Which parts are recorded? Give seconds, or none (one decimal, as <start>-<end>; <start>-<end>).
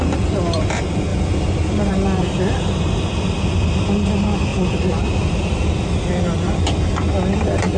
0.0-1.1; 1.9-4.5; 5.8-7.8